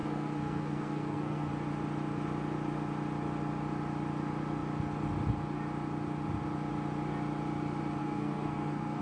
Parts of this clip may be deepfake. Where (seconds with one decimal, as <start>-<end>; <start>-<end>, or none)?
0.0-1.5; 8.0-9.0